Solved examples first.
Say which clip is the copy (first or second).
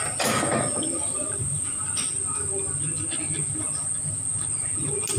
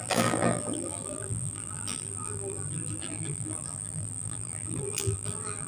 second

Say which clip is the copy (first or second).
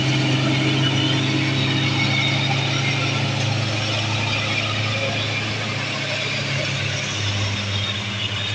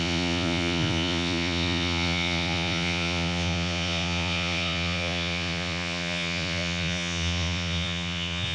second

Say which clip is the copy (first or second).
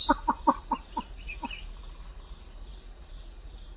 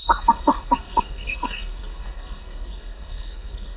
second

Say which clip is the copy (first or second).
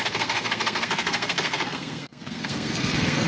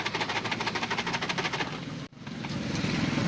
first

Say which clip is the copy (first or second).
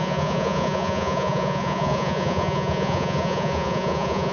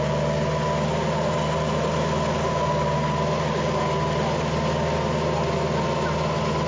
first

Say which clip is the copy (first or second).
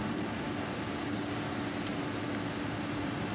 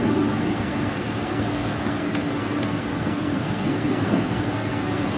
second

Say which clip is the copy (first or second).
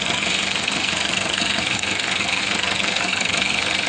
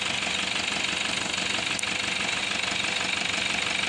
first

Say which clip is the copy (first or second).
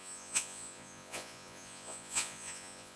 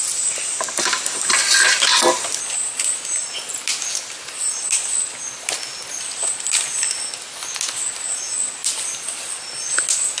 first